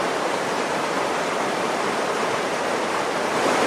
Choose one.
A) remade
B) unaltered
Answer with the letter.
A